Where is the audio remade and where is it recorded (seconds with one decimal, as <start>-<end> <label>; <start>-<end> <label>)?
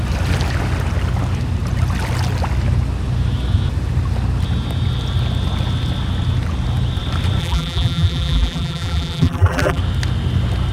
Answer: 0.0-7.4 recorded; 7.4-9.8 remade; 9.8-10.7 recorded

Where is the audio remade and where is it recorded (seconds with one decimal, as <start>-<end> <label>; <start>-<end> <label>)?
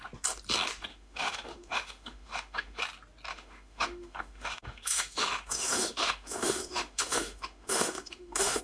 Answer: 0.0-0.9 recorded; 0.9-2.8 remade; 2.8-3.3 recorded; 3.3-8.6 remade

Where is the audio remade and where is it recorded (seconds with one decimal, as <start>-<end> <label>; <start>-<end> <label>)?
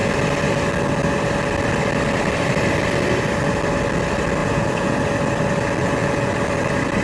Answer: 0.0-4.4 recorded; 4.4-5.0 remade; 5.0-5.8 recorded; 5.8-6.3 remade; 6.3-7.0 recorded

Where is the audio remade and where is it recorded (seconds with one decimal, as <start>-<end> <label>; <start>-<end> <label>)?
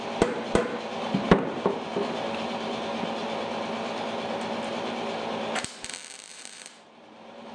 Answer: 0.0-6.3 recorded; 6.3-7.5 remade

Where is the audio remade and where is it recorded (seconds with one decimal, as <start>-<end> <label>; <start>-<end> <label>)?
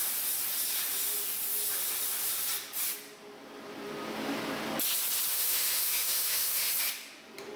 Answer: 0.0-5.3 recorded; 5.3-6.7 remade; 6.7-7.6 recorded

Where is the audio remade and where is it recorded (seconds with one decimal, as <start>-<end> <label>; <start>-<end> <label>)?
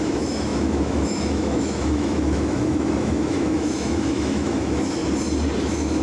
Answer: 0.0-5.0 remade; 5.0-5.6 recorded; 5.6-6.0 remade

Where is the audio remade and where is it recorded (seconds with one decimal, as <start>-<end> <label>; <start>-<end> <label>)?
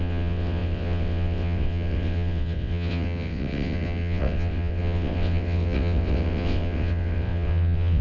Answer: 0.0-8.0 remade